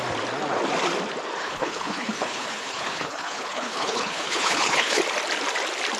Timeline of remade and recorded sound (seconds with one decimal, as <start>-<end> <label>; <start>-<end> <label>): 0.0-1.4 recorded; 1.4-5.0 remade; 5.0-6.0 recorded